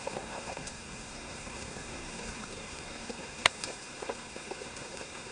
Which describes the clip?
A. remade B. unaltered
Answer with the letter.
A